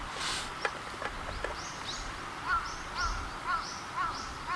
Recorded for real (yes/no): yes